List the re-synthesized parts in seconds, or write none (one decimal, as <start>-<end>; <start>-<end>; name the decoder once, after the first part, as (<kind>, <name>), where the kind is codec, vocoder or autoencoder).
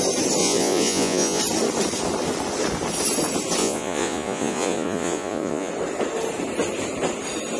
0.4-1.4 (vocoder, Vocos); 3.6-5.7